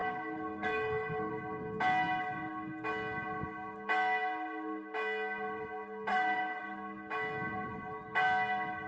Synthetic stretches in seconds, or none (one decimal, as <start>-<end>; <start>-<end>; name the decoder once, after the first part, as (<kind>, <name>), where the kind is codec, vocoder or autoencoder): 0.0-1.3 (codec, SNAC); 6.1-6.6